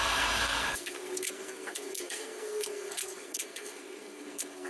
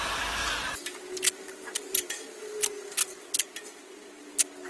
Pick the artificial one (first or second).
first